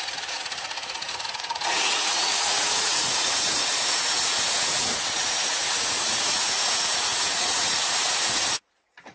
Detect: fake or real fake